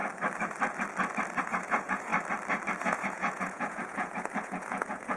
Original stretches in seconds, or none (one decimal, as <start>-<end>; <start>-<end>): 0.0-1.4; 2.1-2.8